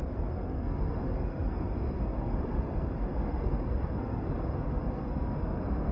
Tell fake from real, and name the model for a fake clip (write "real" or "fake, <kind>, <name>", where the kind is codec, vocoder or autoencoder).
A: fake, codec, SNAC